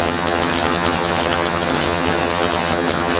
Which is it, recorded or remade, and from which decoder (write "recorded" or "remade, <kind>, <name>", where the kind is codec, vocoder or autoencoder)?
remade, vocoder, HiFi-GAN